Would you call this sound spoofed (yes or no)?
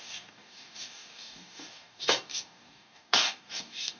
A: yes